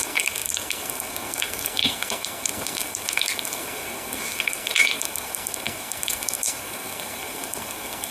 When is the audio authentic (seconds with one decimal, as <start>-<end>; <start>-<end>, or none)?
none